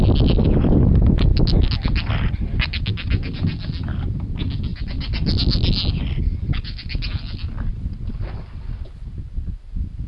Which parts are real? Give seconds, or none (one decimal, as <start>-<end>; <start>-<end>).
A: 0.0-10.1

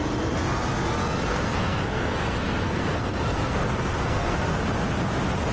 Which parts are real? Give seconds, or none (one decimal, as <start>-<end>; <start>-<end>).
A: 0.0-1.3; 4.6-5.5